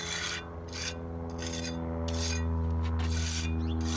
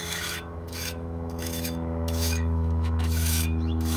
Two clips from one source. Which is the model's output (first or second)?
second